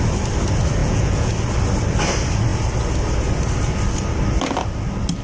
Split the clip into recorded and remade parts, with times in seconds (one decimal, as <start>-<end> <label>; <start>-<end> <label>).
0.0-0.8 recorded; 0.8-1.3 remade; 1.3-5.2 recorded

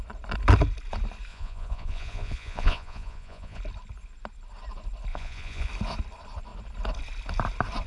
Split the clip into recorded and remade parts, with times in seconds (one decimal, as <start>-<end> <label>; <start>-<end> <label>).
0.0-1.3 recorded; 1.3-3.6 remade; 3.6-5.1 recorded; 5.1-5.7 remade; 5.7-7.9 recorded

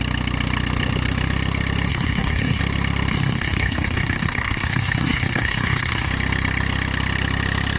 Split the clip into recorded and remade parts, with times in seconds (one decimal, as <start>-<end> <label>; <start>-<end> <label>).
0.0-1.9 recorded; 1.9-2.6 remade; 2.6-3.1 recorded; 3.1-6.1 remade; 6.1-7.8 recorded